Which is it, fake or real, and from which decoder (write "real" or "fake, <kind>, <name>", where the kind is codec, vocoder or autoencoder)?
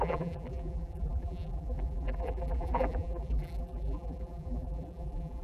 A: fake, vocoder, BigVGAN v2